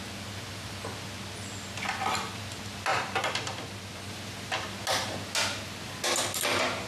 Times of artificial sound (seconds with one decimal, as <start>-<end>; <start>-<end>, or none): 2.9-4.1